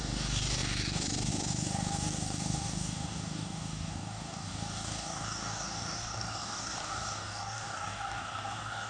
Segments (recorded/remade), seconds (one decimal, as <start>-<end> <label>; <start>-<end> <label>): 0.0-8.9 remade